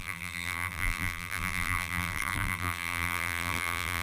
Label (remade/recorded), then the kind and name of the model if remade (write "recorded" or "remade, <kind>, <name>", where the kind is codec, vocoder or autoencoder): remade, vocoder, BigVGAN v2